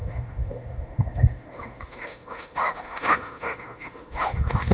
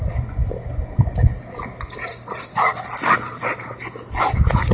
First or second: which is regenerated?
first